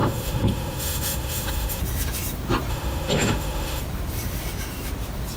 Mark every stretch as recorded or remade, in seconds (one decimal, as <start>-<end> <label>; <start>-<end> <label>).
0.0-1.8 remade; 1.8-2.7 recorded; 2.7-3.8 remade; 3.8-5.4 recorded